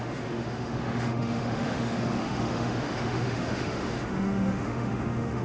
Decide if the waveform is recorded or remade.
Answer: remade